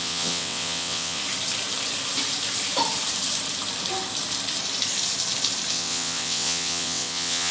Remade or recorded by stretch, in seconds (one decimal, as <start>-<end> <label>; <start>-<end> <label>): 0.0-1.2 remade; 1.2-5.7 recorded; 5.7-7.5 remade